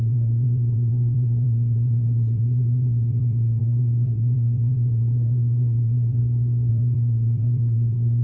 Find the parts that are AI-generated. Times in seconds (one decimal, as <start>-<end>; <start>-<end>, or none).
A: 0.0-6.2; 6.7-8.2